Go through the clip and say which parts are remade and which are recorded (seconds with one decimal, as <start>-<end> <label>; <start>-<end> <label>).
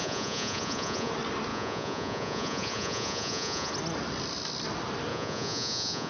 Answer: 0.0-1.1 remade; 1.1-1.5 recorded; 1.5-3.7 remade; 3.7-5.1 recorded; 5.1-6.1 remade